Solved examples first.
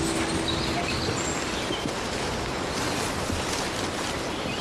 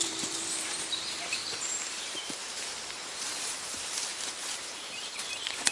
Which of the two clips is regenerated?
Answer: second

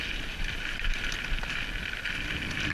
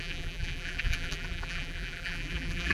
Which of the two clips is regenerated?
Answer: second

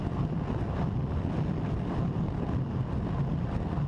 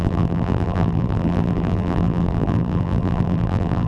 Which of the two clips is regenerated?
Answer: second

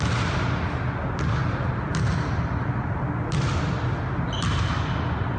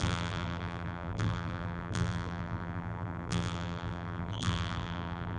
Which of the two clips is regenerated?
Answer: second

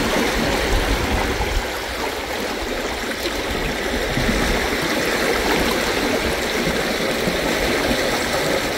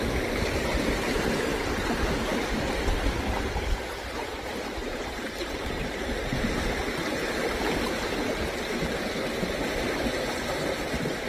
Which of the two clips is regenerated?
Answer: second